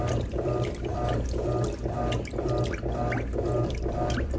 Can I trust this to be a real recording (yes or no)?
yes